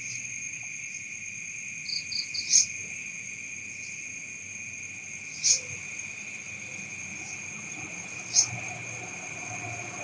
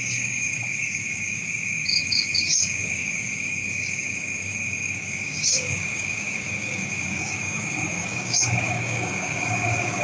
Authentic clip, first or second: first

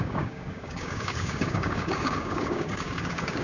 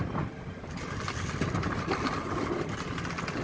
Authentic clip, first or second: second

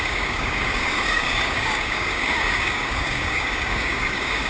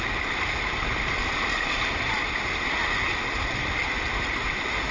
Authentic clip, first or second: second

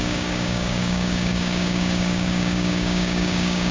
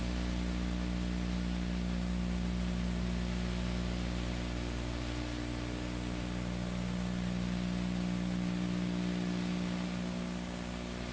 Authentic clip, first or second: second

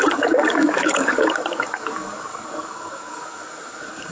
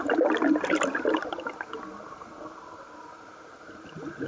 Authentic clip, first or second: second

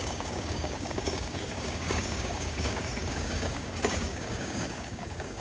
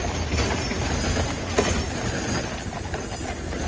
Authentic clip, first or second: second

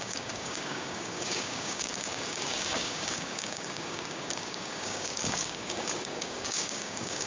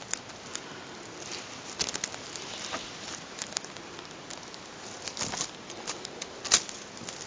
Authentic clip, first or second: second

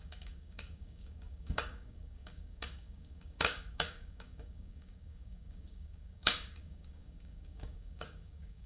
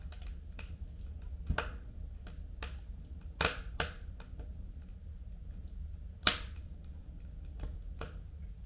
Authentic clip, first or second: second